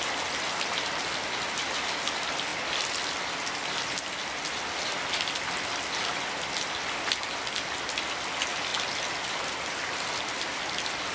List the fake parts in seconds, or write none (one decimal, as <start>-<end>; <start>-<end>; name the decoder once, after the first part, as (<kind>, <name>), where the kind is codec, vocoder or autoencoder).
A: none